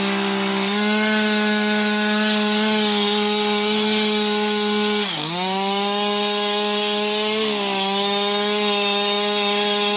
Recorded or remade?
remade